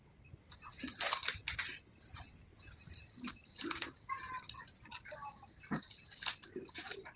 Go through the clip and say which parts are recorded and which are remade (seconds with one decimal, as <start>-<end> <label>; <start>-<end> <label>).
0.0-7.2 recorded